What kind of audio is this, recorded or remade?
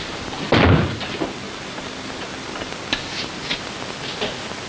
recorded